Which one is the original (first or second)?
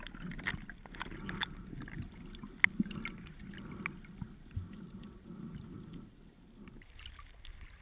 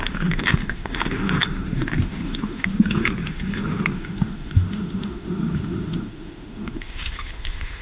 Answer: first